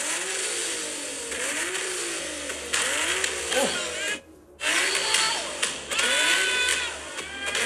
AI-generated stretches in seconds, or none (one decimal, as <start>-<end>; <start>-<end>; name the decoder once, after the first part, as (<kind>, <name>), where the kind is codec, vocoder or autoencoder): none